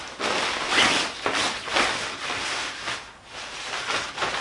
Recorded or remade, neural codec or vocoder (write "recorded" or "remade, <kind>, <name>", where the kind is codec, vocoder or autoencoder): recorded